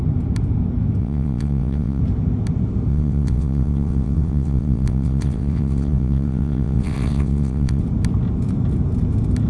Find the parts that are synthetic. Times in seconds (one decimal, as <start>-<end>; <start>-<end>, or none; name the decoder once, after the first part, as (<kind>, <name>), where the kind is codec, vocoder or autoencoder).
1.0-2.0 (vocoder, WaveNeXt); 2.9-7.8